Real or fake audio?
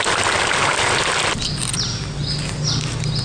real